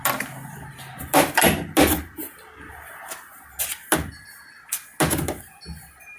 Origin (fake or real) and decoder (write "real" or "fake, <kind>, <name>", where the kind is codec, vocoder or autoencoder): real